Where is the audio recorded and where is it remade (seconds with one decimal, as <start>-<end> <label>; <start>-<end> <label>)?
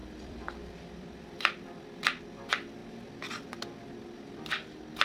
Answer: 0.0-2.2 remade; 2.2-2.8 recorded; 2.8-3.6 remade; 3.6-5.0 recorded